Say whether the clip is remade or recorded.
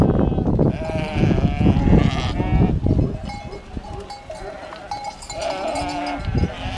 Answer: recorded